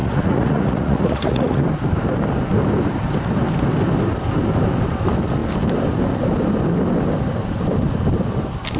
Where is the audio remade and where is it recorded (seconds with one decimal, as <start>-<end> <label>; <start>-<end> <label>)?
0.0-1.6 remade; 1.6-8.8 recorded